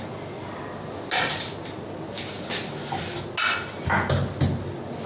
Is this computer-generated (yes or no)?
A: no